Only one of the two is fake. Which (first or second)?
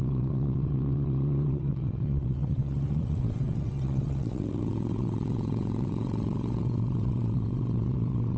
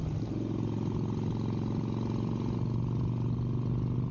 first